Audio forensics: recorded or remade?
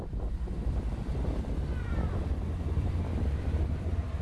remade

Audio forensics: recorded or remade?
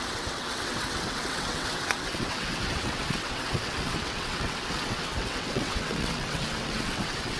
remade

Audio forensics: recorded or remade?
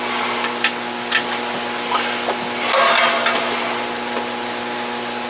recorded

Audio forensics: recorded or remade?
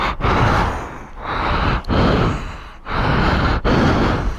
recorded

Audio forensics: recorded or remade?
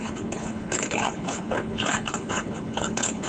remade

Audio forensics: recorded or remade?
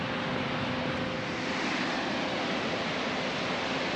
recorded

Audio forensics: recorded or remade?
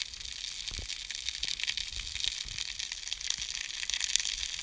recorded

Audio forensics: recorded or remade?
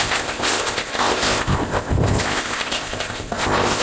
remade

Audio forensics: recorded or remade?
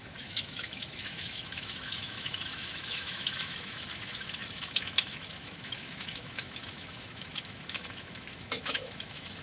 remade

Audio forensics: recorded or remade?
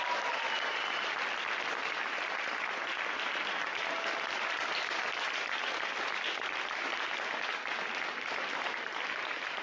recorded